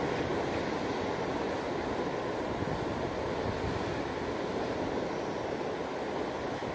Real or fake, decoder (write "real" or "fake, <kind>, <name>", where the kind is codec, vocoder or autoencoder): real